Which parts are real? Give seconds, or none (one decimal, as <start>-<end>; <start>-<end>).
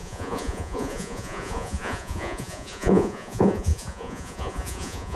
none